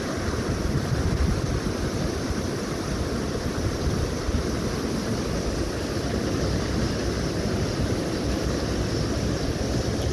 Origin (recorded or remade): recorded